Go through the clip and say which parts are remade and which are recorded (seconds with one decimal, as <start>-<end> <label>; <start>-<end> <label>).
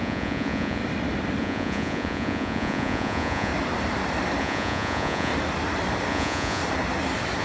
0.0-0.8 remade; 0.8-1.4 recorded; 1.4-3.5 remade; 3.5-4.4 recorded; 4.4-5.3 remade; 5.3-6.1 recorded; 6.1-6.6 remade; 6.6-7.4 recorded